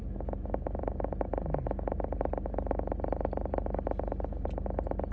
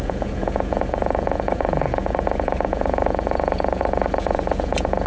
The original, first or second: first